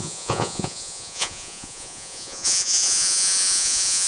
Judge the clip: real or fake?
fake